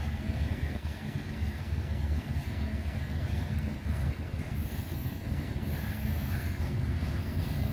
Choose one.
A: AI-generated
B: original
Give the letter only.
A